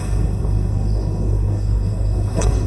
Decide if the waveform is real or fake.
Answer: fake